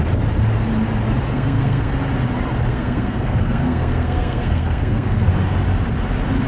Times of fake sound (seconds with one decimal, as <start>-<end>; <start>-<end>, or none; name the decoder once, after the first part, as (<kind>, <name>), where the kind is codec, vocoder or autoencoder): 1.3-1.9 (codec, SNAC); 2.7-5.3